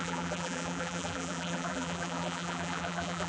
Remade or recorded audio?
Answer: remade